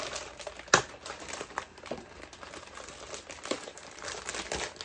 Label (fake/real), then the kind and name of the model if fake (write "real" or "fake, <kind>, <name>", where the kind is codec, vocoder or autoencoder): real